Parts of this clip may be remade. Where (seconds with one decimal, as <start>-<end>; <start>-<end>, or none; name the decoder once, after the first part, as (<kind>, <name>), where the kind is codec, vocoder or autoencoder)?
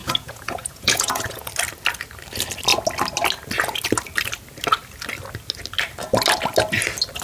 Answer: 0.0-1.5 (vocoder, Vocos)